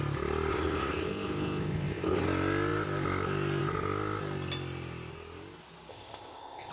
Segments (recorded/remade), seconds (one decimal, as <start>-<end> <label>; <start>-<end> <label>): 0.0-0.5 recorded; 0.5-2.2 remade; 2.2-5.9 recorded; 5.9-6.7 remade